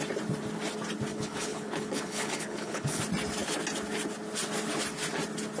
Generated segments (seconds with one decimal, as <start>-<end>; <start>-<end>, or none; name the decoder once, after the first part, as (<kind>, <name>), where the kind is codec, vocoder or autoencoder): 1.1-3.0 (codec, HILCodec)